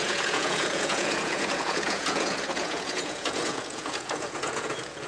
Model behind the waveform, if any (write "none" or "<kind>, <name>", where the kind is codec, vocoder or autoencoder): vocoder, Vocos